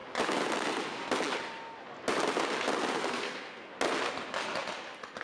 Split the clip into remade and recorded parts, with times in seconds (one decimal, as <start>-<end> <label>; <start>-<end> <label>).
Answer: 0.0-3.1 recorded; 3.1-3.7 remade; 3.7-5.2 recorded